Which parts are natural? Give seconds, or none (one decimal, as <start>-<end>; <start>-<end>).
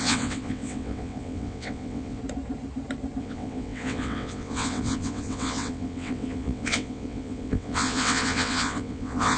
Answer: 2.2-3.2